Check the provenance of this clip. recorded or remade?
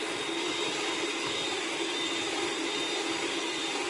recorded